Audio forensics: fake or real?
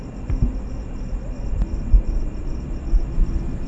real